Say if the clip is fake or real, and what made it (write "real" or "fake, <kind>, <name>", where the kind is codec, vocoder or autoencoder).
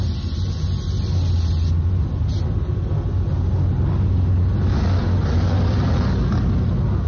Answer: real